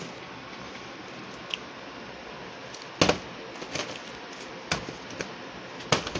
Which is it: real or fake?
real